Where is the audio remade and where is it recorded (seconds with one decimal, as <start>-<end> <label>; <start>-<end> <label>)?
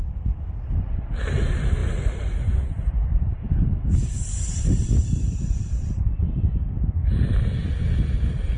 0.0-1.8 recorded; 1.8-6.2 remade; 6.2-8.6 recorded